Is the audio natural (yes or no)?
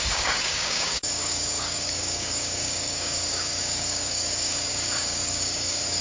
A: no